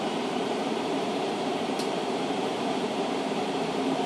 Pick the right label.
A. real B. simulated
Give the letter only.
B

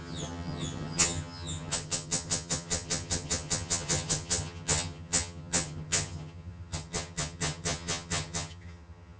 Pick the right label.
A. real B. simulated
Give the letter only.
B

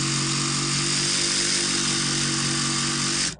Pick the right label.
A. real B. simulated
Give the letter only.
A